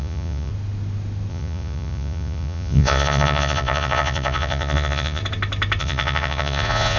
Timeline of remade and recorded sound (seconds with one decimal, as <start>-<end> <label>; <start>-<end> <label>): 0.0-0.5 remade; 0.5-1.3 recorded; 1.3-5.2 remade; 5.2-5.8 recorded; 5.8-7.0 remade